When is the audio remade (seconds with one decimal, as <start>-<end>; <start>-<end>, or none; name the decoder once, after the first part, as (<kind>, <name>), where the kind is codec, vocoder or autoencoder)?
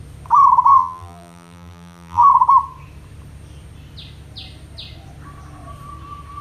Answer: 0.7-2.3 (vocoder, BigVGAN v2)